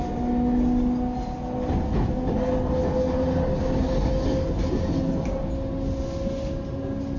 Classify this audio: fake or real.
real